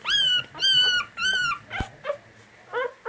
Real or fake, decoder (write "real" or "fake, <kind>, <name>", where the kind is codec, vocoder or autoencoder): real